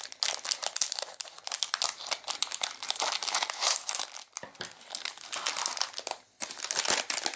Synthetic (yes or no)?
no